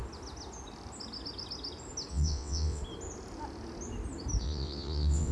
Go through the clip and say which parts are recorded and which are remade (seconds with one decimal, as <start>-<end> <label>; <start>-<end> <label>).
0.0-2.1 recorded; 2.1-2.8 remade; 2.8-4.4 recorded; 4.4-5.3 remade